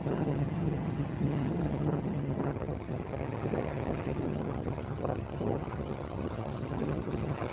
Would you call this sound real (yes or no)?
no